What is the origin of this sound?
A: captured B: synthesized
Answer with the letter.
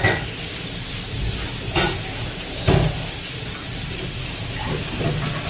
A